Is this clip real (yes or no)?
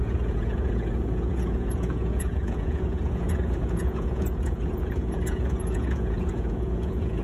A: no